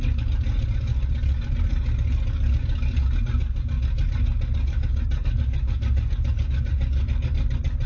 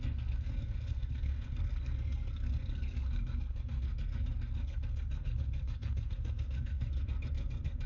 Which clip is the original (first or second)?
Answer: first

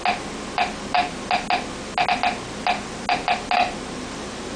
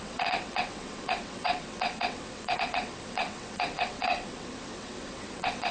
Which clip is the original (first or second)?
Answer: first